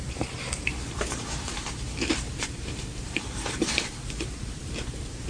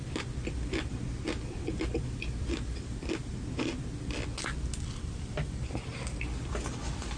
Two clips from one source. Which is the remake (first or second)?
first